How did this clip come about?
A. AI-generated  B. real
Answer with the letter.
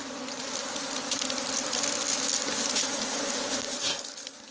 B